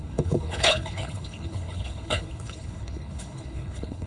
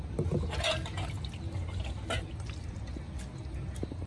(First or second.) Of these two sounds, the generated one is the first